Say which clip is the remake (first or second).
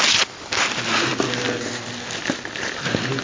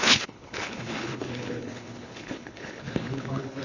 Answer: second